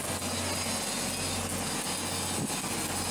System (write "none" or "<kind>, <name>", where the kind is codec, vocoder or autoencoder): none